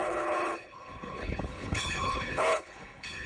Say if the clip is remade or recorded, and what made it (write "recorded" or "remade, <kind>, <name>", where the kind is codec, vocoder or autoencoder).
remade, codec, HILCodec